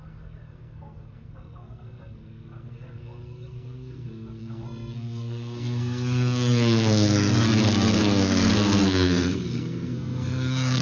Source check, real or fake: fake